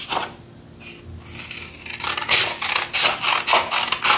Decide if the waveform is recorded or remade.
recorded